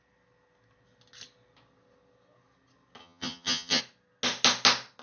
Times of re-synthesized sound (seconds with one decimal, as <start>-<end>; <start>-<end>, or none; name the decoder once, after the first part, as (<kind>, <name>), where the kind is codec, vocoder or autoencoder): 3.0-3.8 (vocoder, HiFi-GAN)